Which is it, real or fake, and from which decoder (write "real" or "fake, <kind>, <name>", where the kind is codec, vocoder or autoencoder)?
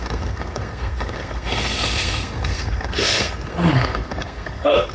fake, codec, SNAC